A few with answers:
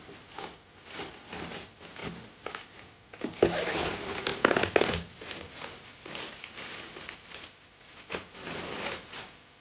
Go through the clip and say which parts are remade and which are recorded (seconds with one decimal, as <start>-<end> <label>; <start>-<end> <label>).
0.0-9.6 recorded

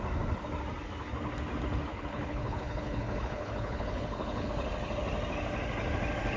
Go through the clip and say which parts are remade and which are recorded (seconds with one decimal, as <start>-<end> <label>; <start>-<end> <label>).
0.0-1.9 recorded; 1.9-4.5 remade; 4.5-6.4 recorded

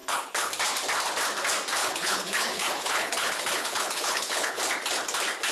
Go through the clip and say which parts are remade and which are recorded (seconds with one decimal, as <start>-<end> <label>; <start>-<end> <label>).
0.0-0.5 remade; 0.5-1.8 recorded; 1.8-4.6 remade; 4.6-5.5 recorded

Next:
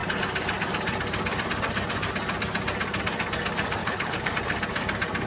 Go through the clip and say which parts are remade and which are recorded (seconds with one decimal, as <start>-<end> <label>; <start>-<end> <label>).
0.0-3.8 recorded; 3.8-4.3 remade; 4.3-5.3 recorded

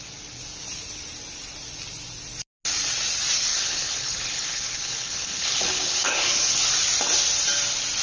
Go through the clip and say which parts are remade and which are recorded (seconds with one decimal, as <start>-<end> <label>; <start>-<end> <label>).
0.0-3.5 recorded; 3.5-6.6 remade; 6.6-8.0 recorded